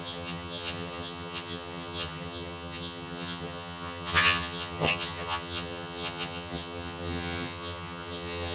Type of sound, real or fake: fake